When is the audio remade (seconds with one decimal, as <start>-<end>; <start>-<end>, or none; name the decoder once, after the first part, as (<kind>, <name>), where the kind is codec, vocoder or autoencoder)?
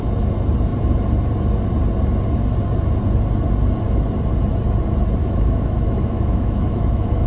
5.2-7.3 (autoencoder, DAC-VAE)